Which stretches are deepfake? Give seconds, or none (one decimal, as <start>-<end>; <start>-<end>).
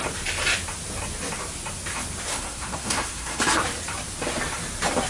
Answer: 2.3-3.4